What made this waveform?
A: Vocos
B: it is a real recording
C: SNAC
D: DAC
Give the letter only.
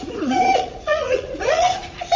A